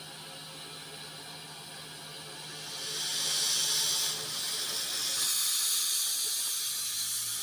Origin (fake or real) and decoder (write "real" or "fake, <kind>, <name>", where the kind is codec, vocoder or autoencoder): real